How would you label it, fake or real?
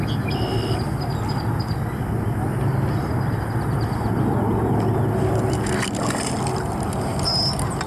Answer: real